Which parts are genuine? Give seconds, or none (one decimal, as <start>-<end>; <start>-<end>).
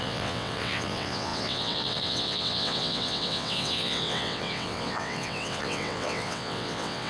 none